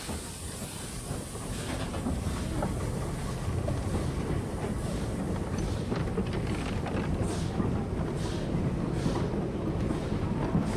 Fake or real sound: real